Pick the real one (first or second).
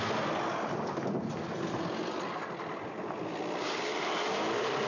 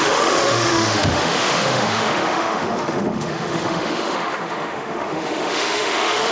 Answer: first